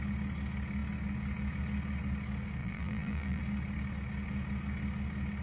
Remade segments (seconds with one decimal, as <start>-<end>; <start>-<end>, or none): 2.6-3.4